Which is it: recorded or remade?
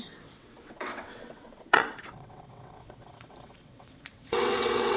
remade